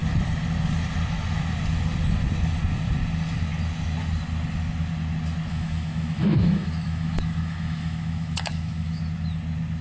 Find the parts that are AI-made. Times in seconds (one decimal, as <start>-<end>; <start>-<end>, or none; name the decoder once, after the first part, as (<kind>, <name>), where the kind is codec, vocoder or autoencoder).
5.5-9.0 (autoencoder, DAC-VAE)